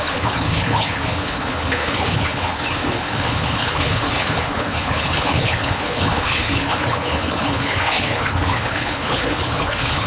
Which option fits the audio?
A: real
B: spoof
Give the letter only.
B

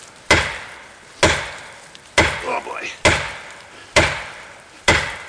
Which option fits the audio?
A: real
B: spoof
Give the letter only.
A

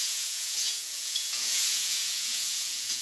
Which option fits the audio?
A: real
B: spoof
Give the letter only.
B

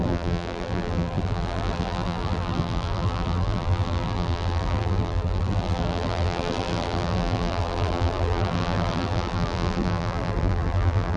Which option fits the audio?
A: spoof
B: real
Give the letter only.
A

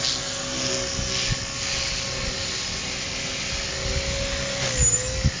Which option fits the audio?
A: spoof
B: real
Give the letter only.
B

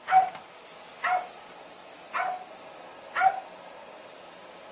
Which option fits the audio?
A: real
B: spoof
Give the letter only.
A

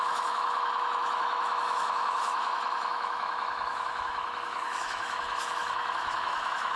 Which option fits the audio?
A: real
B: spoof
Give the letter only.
B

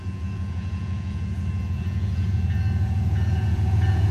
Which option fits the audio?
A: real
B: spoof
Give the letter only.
B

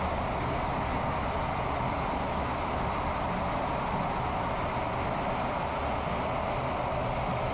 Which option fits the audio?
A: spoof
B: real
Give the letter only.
B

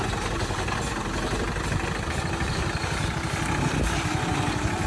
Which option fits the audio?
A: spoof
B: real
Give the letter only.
B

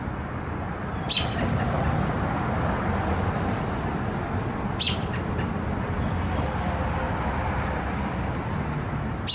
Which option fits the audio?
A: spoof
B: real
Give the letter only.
B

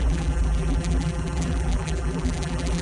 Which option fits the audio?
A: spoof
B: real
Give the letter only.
A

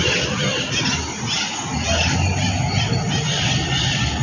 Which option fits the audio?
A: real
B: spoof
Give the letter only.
A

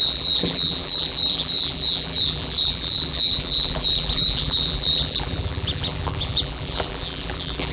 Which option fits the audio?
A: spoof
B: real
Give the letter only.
A